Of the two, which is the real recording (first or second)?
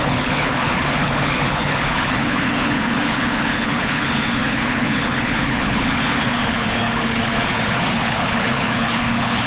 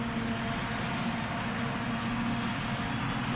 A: second